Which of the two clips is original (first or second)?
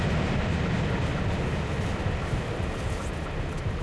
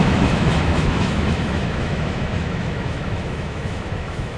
first